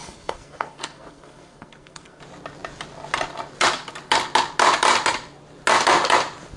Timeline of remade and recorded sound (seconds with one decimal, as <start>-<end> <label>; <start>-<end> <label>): 0.0-2.2 remade; 2.2-6.6 recorded